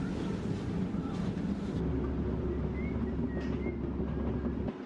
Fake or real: real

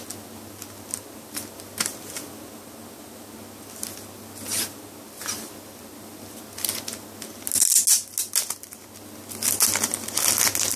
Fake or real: real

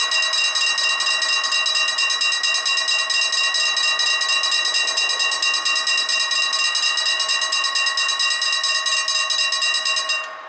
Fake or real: real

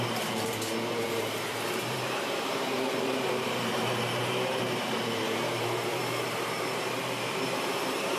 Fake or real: fake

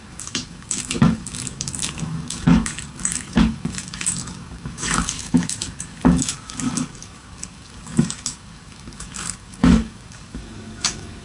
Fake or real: fake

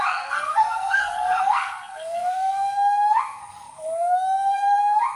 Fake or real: fake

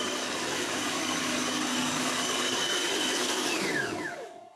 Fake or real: fake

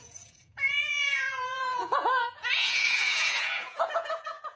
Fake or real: fake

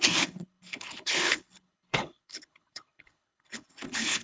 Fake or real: fake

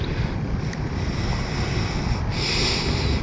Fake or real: real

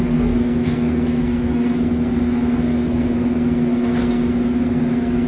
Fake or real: fake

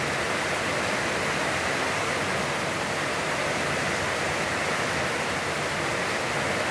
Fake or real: real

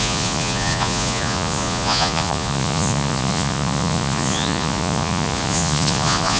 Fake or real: fake